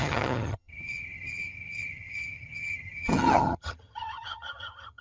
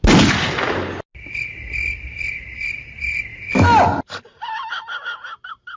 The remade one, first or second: first